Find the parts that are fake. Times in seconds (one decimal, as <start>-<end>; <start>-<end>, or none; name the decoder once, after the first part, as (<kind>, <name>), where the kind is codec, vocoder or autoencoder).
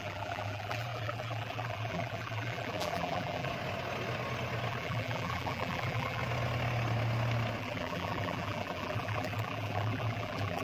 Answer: 0.0-3.5 (vocoder, BigVGAN v2); 4.7-6.2; 7.6-10.6